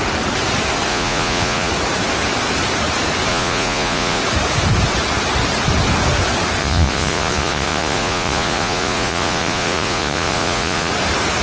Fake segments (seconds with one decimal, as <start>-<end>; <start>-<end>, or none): 0.9-1.7; 3.3-4.2; 6.6-10.9